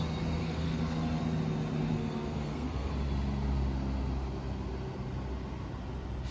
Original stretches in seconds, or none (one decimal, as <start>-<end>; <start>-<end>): 0.0-0.4; 1.2-1.9; 2.9-6.3